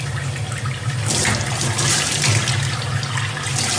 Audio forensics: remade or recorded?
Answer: recorded